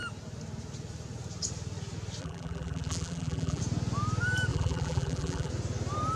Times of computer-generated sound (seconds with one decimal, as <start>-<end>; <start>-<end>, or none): 2.2-3.6; 4.5-5.5